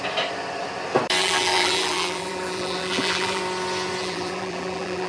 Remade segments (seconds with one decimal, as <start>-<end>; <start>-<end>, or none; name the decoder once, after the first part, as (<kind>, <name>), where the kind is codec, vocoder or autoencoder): 1.2-3.4 (vocoder, BigVGAN v2); 4.0-5.1